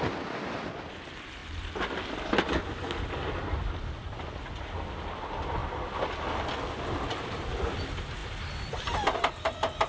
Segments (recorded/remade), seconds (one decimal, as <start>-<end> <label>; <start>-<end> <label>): 0.0-9.9 recorded